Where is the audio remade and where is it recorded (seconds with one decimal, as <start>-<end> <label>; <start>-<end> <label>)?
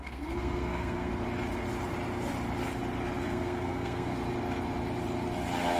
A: 0.0-1.1 remade; 1.1-3.2 recorded; 3.2-4.1 remade; 4.1-5.8 recorded